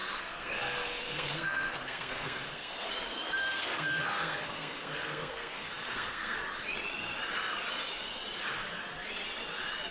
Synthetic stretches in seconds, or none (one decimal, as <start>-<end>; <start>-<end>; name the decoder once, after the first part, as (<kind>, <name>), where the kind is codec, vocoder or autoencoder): 0.0-2.9 (codec, SNAC); 3.4-6.4